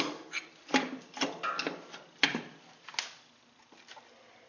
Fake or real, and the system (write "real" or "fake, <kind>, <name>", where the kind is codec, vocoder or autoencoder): real